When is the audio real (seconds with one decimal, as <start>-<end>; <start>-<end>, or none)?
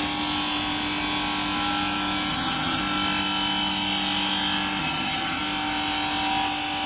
0.0-2.3; 2.8-4.8; 5.4-6.9